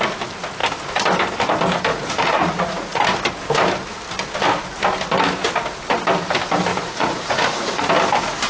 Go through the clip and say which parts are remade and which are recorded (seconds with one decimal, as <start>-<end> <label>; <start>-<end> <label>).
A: 0.0-1.9 recorded; 1.9-3.0 remade; 3.0-6.7 recorded; 6.7-7.8 remade; 7.8-8.5 recorded